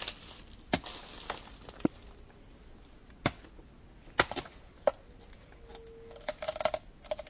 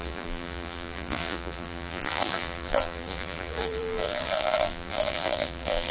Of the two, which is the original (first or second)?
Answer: first